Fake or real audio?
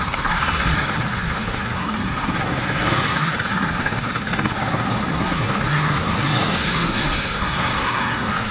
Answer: fake